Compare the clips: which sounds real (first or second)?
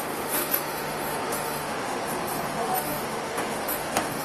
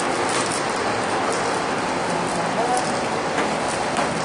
second